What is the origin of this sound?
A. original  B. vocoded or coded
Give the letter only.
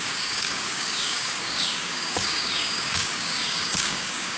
B